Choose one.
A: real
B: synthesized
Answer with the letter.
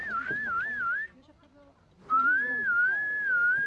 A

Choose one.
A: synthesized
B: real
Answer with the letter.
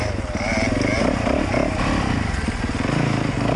B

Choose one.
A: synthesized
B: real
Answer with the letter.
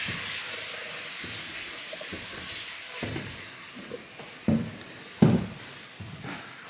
B